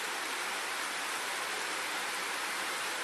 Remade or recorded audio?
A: recorded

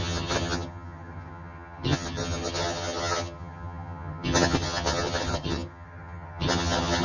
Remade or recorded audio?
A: remade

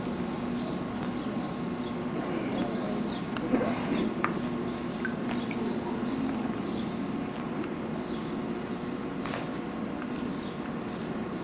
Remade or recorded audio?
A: recorded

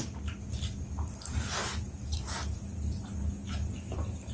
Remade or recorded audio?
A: recorded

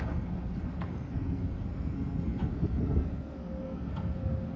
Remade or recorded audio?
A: remade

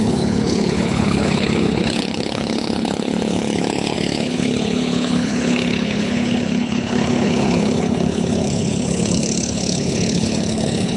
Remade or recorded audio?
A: remade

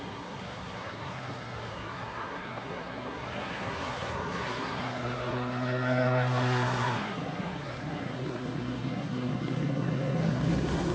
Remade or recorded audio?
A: remade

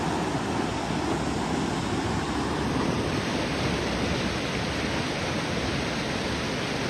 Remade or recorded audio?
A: recorded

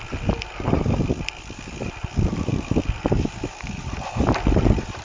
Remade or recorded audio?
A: recorded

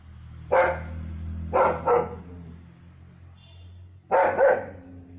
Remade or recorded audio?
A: recorded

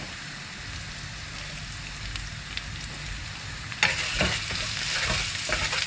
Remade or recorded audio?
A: recorded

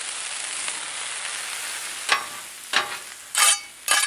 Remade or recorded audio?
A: recorded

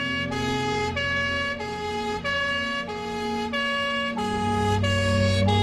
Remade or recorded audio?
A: recorded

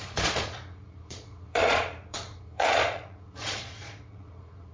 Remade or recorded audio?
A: remade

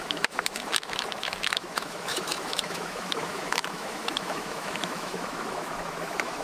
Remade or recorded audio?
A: remade